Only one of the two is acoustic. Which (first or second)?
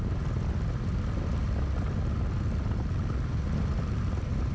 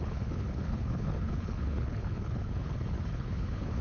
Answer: first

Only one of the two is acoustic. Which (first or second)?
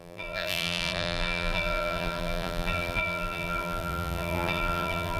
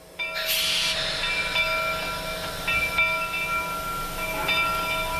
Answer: second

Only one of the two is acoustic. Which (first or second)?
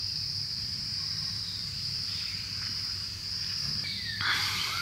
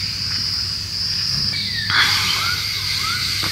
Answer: second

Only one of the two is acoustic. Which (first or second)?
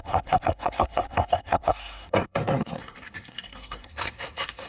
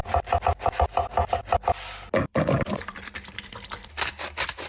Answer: second